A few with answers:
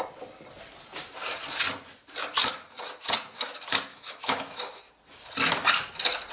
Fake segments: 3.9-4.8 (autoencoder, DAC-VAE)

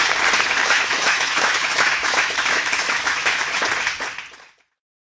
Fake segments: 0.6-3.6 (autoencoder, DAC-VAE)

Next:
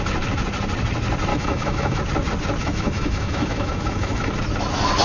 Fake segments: 1.3-2.0 (autoencoder, DAC-VAE); 2.6-4.3

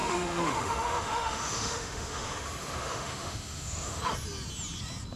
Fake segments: 0.0-4.0 (autoencoder, DAC-VAE)